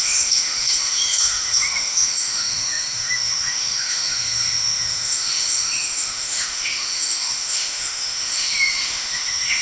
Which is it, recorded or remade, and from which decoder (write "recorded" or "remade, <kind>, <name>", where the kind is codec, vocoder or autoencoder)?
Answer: remade, autoencoder, DAC-VAE